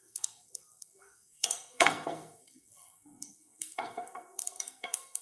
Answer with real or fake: fake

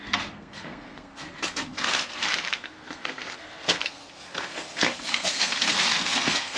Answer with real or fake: fake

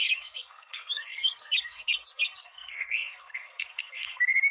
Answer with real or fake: fake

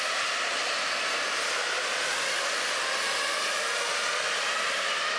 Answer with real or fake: real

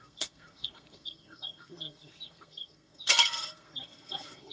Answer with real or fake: fake